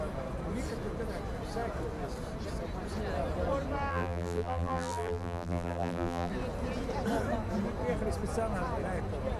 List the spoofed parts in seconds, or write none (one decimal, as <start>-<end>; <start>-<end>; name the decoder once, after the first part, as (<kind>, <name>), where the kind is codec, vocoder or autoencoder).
3.9-6.3 (vocoder, BigVGAN v2)